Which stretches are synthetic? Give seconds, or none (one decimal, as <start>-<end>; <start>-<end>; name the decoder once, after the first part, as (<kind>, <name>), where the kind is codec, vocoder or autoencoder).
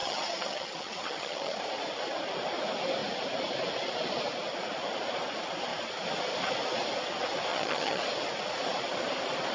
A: 0.0-1.6 (vocoder, HiFi-GAN); 7.5-8.0